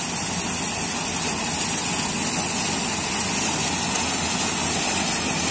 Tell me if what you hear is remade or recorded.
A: recorded